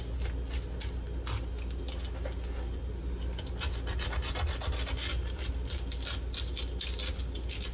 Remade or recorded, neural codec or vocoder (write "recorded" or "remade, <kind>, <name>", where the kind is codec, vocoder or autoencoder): recorded